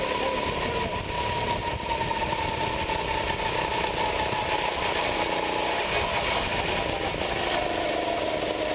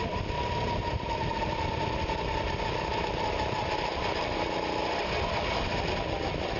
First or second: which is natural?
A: first